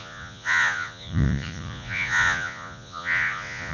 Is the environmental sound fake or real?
fake